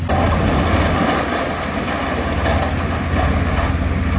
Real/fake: real